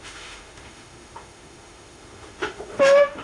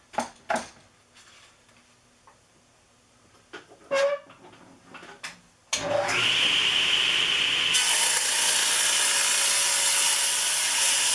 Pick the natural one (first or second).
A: second